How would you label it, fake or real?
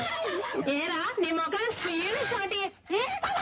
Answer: fake